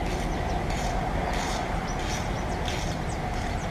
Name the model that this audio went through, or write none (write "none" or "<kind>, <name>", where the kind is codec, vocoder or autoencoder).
none